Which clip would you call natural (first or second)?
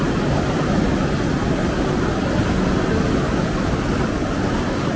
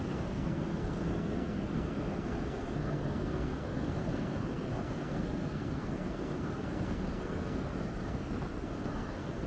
first